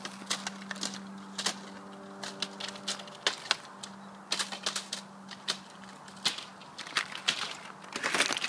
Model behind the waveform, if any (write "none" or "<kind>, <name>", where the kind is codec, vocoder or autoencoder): none